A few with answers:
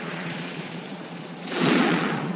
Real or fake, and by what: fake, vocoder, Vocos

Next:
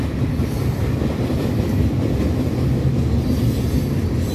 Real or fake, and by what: real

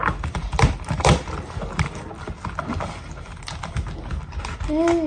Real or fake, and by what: real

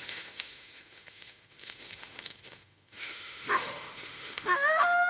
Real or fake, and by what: fake, autoencoder, DAC-VAE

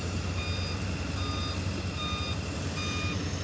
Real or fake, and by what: real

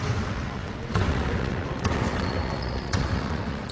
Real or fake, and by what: fake, vocoder, WaveNeXt